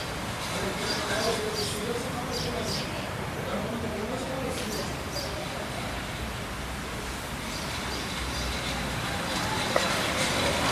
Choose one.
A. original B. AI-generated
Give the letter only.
B